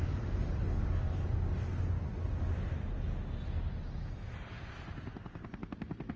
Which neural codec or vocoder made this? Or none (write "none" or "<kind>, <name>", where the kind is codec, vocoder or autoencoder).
none